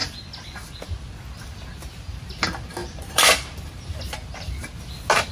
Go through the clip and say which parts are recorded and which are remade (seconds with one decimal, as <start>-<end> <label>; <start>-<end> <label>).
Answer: 0.0-2.8 recorded; 2.8-4.0 remade; 4.0-5.3 recorded